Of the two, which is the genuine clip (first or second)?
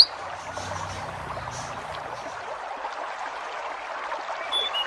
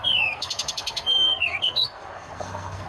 first